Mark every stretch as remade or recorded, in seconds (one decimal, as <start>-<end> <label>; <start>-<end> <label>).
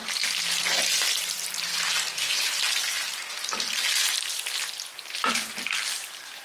0.0-1.7 recorded; 1.7-5.3 remade; 5.3-6.4 recorded